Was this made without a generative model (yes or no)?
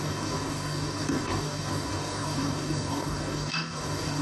no